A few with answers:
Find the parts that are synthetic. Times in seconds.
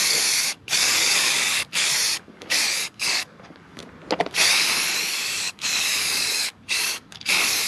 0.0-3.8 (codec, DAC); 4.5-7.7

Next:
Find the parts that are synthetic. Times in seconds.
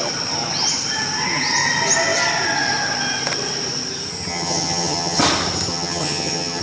4.3-5.2 (vocoder, HiFi-GAN); 5.7-6.6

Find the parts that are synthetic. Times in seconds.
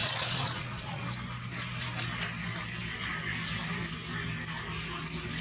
0.0-1.0 (vocoder, Vocos)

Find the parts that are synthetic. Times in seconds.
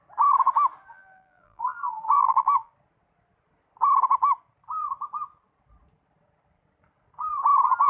0.9-2.7 (vocoder, BigVGAN v2)